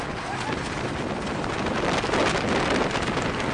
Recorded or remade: recorded